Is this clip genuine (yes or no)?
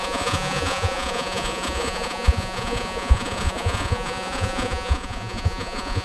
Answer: no